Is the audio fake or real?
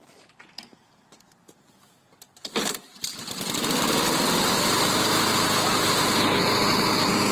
fake